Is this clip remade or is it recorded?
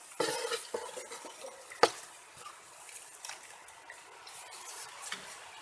recorded